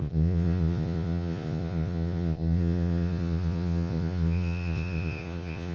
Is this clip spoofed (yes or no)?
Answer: yes